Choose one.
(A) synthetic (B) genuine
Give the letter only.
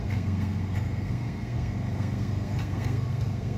A